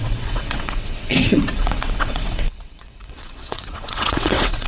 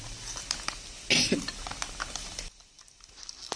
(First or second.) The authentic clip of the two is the second